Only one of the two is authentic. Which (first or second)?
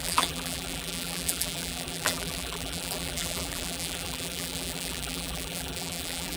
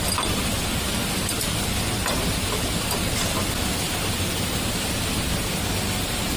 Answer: second